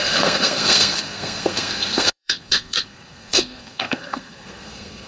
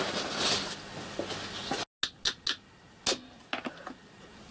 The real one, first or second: second